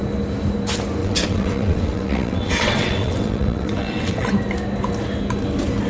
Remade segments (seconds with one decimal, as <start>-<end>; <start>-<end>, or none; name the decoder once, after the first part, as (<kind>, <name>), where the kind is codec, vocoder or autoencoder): 1.0-4.3 (vocoder, WaveNeXt)